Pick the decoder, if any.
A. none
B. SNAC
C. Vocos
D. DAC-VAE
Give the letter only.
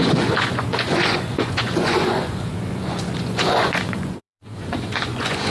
C